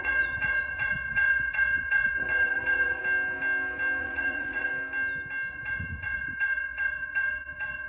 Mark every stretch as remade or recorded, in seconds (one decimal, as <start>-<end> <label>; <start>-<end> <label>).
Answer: 0.0-3.0 remade; 3.0-4.0 recorded; 4.0-4.7 remade; 4.7-5.5 recorded; 5.5-7.9 remade